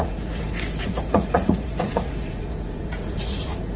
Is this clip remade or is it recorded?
remade